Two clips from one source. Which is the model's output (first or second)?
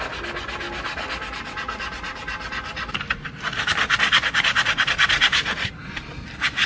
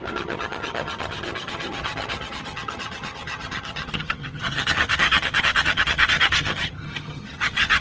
second